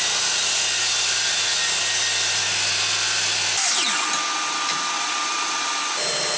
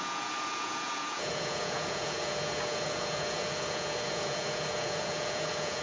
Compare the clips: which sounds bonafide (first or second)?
first